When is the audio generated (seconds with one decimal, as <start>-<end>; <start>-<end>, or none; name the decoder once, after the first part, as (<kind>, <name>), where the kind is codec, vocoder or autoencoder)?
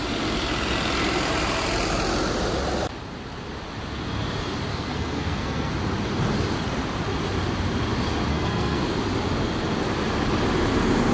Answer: 4.7-5.7 (codec, SNAC); 8.3-8.8